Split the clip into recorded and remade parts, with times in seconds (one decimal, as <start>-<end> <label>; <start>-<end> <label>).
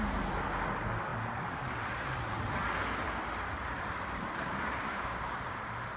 0.0-1.1 recorded; 1.1-1.8 remade; 1.8-3.6 recorded; 3.6-5.5 remade; 5.5-6.0 recorded